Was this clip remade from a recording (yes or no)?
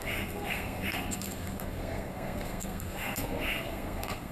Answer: yes